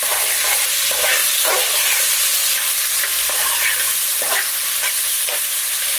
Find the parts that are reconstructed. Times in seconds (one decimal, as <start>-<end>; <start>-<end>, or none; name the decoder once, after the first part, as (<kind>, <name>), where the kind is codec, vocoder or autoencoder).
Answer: 2.4-5.4 (vocoder, BigVGAN v2)